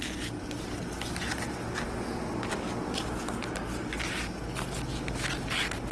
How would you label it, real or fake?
real